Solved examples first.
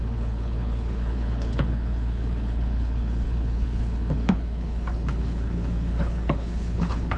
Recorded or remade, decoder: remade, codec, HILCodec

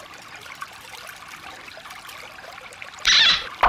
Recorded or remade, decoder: remade, vocoder, BigVGAN v2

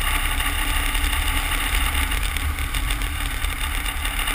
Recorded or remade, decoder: recorded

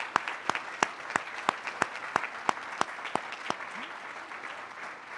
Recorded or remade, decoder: recorded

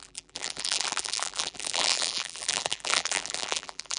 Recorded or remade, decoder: remade, vocoder, BigVGAN v2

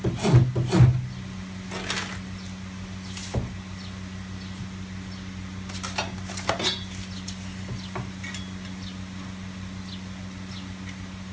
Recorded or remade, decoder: recorded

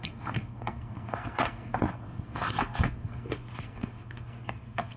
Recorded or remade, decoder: remade, codec, SNAC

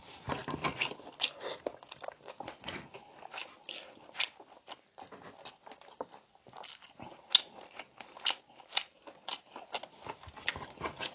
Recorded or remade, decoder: recorded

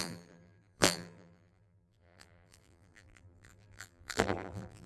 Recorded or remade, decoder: remade, vocoder, BigVGAN v2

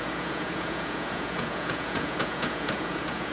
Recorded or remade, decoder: remade, vocoder, Vocos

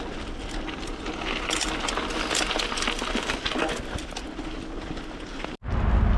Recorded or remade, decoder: recorded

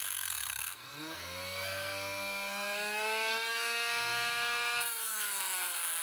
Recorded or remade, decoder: remade, codec, SNAC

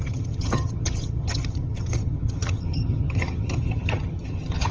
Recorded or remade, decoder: remade, vocoder, HiFi-GAN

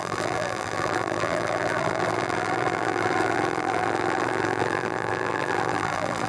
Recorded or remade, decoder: remade, vocoder, BigVGAN v2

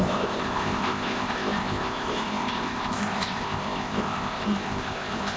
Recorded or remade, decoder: remade, codec, ZipCodec